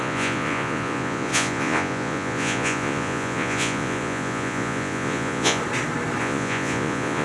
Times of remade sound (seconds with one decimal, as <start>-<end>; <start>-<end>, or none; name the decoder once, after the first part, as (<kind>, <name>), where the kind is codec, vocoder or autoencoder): 0.0-5.6 (vocoder, Vocos); 6.2-7.2